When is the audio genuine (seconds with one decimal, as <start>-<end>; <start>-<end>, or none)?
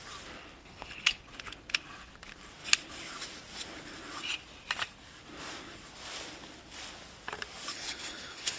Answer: 0.0-0.6; 1.2-7.7